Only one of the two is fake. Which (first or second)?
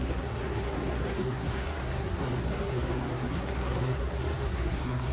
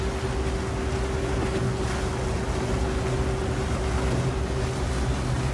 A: first